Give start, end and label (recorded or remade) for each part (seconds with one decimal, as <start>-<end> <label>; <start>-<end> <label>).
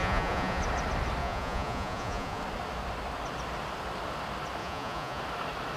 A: 0.0-0.6 remade; 0.6-1.2 recorded; 1.2-2.4 remade; 2.4-4.6 recorded; 4.6-5.2 remade; 5.2-5.8 recorded